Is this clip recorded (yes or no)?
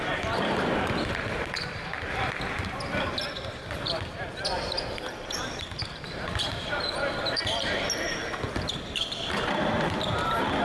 no